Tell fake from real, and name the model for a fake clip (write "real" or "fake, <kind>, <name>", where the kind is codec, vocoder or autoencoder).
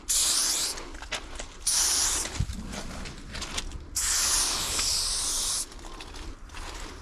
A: real